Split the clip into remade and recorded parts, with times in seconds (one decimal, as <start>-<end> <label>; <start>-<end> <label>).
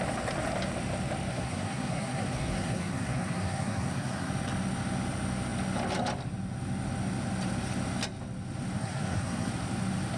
0.0-1.3 recorded; 1.3-4.3 remade; 4.3-8.8 recorded; 8.8-9.5 remade; 9.5-10.2 recorded